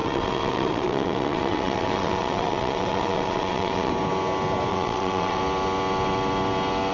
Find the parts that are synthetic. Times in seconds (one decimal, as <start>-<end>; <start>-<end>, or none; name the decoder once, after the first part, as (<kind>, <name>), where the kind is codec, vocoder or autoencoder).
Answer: 0.0-3.9 (vocoder, WaveNeXt); 4.7-5.4